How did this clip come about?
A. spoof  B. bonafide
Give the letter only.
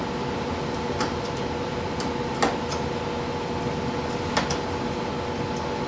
B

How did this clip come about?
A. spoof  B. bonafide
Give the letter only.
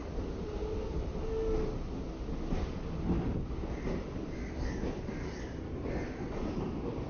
B